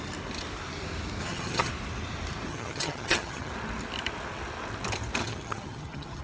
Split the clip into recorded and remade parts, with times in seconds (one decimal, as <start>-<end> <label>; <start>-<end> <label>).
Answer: 0.0-1.2 recorded; 1.2-1.7 remade; 1.7-2.5 recorded; 2.5-3.5 remade; 3.5-5.2 recorded; 5.2-6.2 remade